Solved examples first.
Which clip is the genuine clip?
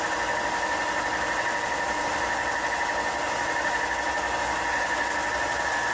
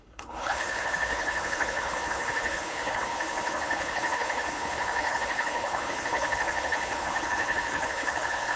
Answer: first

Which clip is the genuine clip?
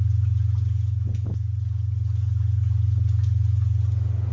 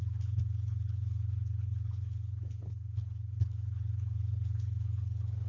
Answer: first